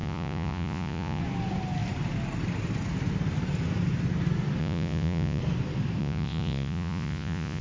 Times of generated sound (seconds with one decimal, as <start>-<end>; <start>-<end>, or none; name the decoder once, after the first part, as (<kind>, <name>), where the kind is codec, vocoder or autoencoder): 0.0-1.2 (vocoder, Vocos); 4.6-5.4; 6.0-7.6